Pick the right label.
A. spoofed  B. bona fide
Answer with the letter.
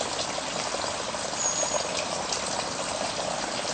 B